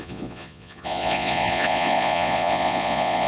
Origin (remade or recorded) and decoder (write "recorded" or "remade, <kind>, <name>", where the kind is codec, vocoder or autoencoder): remade, vocoder, Vocos